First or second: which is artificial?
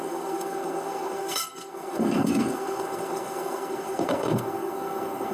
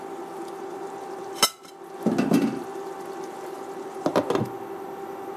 first